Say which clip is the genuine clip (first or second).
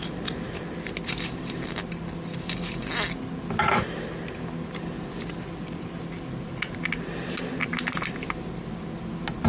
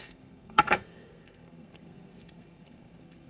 first